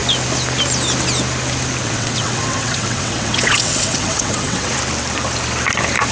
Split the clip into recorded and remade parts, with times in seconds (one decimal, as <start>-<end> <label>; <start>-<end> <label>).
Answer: 0.0-1.8 recorded; 1.8-4.7 remade; 4.7-6.1 recorded